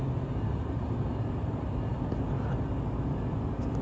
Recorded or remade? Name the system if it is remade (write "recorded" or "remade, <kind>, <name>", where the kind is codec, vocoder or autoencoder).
recorded